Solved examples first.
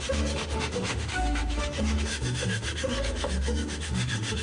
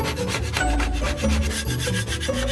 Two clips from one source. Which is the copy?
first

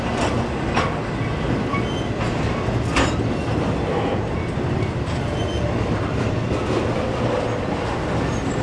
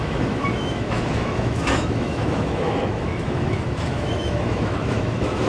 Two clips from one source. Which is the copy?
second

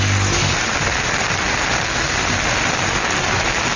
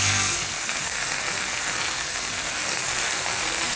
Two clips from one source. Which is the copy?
second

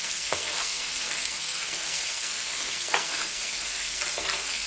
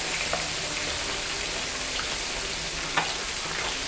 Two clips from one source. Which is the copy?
first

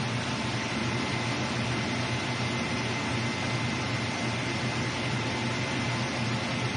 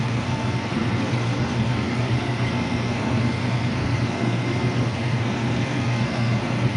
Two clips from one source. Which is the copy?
second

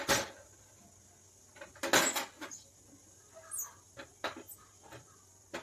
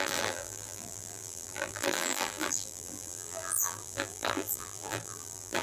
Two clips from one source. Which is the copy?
second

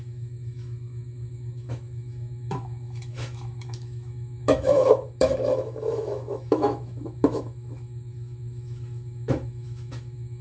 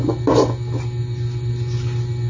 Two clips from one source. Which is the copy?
first